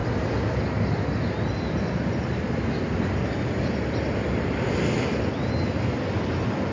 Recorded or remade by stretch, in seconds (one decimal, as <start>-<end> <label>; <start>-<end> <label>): 0.0-6.7 recorded